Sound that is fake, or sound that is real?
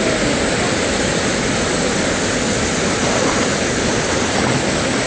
real